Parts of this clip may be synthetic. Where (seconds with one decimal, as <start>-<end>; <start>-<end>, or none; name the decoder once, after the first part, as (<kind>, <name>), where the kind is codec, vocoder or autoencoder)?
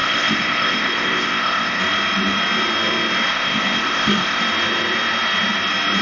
0.0-1.8 (codec, ZipCodec); 3.3-4.4